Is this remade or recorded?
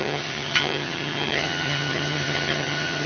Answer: remade